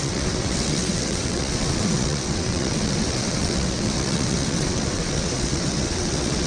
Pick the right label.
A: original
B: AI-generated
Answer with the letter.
B